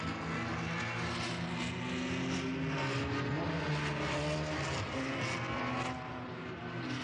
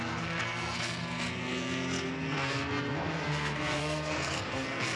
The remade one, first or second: second